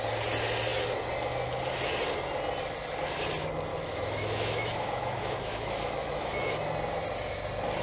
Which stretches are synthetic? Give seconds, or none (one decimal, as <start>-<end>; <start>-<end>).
3.7-6.5